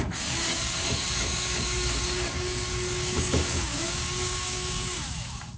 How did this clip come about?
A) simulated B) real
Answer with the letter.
A